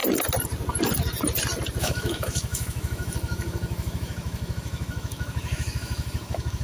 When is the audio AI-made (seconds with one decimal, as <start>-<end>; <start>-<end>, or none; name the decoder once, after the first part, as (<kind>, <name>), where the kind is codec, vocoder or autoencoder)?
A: 1.8-6.6 (autoencoder, DAC-VAE)